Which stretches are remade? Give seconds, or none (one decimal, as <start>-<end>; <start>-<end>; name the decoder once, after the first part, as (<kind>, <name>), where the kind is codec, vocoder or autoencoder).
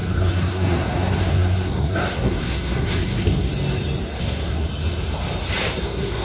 0.0-3.5 (codec, SNAC); 4.2-4.7; 5.8-6.2